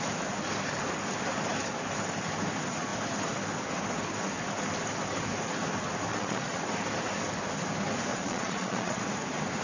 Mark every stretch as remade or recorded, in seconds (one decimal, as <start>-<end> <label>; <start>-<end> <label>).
0.0-6.1 recorded; 6.1-6.6 remade; 6.6-8.1 recorded; 8.1-9.0 remade; 9.0-9.6 recorded